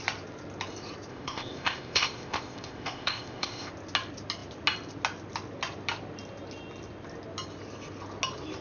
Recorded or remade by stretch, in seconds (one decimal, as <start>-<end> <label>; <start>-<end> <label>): 0.0-1.1 recorded; 1.1-3.7 remade; 3.7-8.6 recorded